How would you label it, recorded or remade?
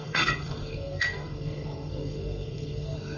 remade